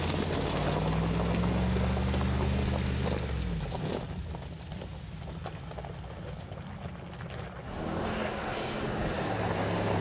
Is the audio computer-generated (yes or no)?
no